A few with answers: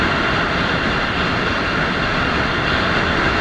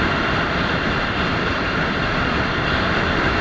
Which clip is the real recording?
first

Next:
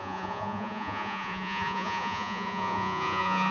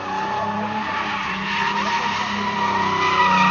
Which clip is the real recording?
second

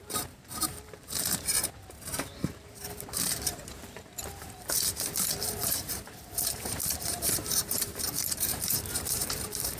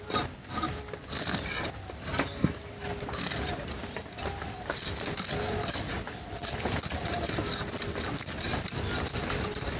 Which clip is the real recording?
second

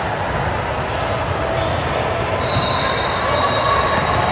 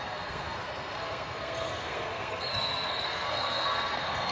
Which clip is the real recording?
first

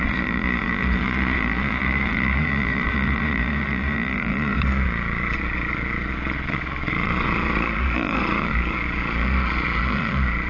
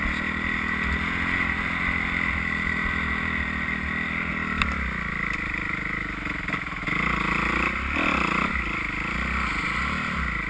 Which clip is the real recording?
second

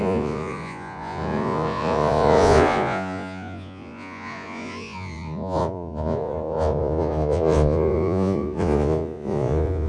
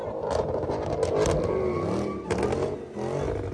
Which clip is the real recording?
second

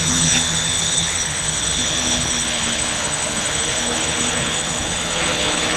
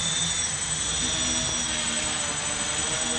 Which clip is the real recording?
second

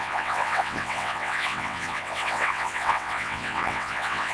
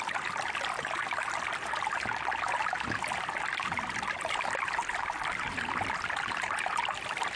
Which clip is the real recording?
second